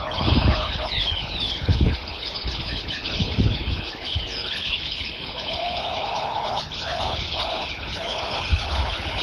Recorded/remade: remade